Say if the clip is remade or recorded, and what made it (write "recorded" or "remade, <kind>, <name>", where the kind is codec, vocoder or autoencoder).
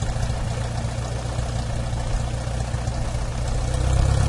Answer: recorded